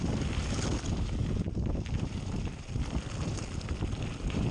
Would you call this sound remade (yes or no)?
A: no